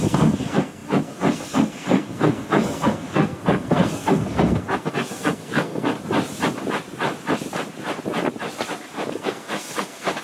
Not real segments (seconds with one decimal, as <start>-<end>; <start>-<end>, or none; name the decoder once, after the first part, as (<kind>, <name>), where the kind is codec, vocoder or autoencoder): 0.0-5.9 (codec, SNAC); 9.1-10.2